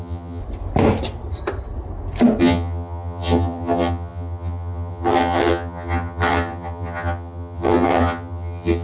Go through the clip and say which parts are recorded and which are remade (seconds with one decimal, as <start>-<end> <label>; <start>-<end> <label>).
0.0-0.4 remade; 0.4-2.4 recorded; 2.4-8.8 remade